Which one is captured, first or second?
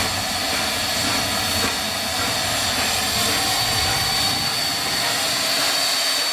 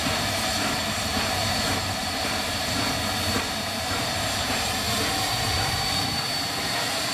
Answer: first